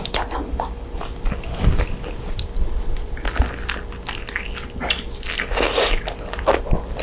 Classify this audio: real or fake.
real